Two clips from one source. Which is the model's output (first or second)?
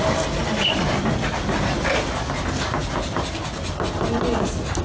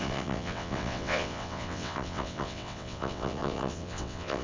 second